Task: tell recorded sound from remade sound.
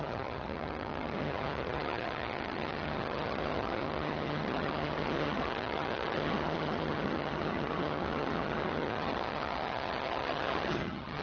remade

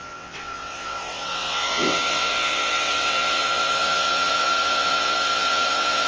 remade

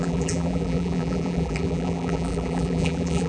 remade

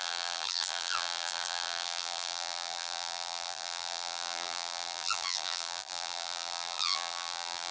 remade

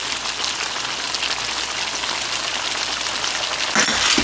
recorded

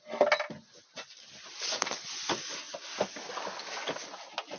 recorded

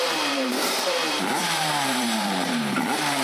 remade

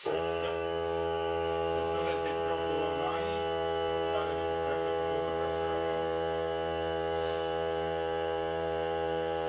remade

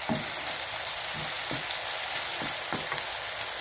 recorded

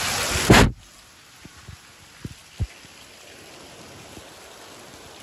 recorded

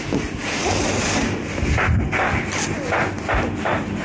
recorded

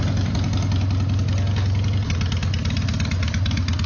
recorded